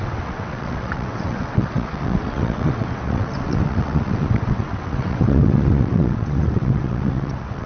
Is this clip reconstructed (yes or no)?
yes